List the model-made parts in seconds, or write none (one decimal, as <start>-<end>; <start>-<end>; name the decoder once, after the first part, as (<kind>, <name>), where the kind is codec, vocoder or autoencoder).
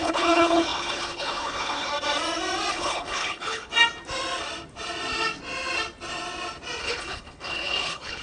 0.0-1.9 (codec, HILCodec); 2.7-3.7; 6.8-8.2